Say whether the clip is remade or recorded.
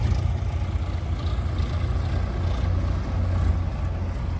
recorded